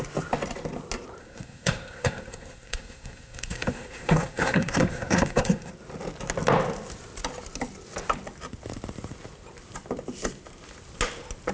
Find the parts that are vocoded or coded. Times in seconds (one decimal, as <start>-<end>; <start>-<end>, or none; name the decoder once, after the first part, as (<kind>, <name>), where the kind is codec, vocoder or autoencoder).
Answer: 1.2-5.7 (codec, SNAC)